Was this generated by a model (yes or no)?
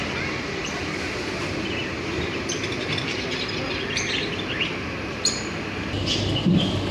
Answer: yes